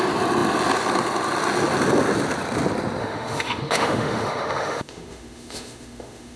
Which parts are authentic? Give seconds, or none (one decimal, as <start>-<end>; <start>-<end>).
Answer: 0.0-3.0